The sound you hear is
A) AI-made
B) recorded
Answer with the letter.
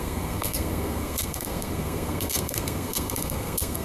A